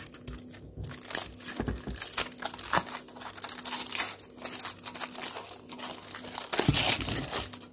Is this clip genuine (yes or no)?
yes